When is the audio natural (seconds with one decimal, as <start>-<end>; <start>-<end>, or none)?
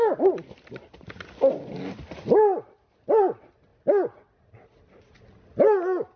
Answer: 0.0-6.2